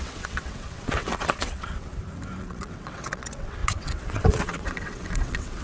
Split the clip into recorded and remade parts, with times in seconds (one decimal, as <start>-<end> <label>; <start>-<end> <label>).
0.0-1.9 remade; 1.9-2.4 recorded; 2.4-5.6 remade